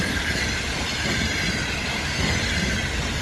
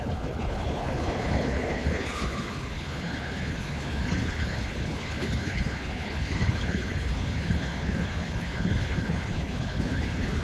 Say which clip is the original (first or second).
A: first